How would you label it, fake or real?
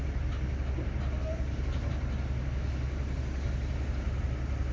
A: real